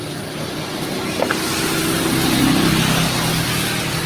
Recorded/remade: recorded